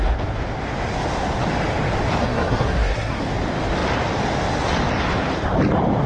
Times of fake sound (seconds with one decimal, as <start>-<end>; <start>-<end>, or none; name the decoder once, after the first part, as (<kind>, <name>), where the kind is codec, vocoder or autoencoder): 2.2-3.2 (codec, SNAC)